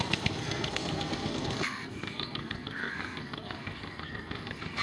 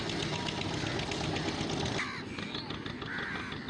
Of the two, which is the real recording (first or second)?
second